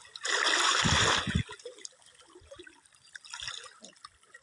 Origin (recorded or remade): recorded